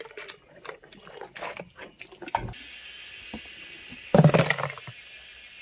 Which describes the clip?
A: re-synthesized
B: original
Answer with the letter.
B